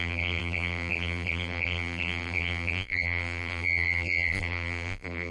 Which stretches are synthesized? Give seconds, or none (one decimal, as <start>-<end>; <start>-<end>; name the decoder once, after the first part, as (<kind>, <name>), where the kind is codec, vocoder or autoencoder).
0.0-5.3 (vocoder, BigVGAN v2)